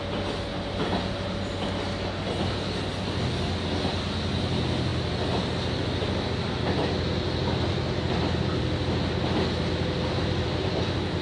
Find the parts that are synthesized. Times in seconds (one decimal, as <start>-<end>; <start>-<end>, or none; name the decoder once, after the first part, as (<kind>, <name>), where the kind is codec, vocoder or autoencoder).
none